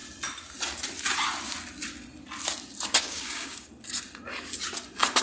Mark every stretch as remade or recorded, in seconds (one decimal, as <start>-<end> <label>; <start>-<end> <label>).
0.0-3.0 recorded; 3.0-3.7 remade; 3.7-5.2 recorded